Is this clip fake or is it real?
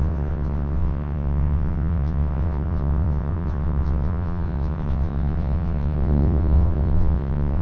fake